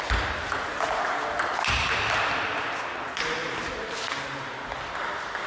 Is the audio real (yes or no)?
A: yes